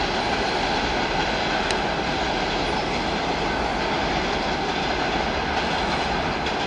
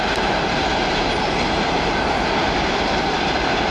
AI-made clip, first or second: second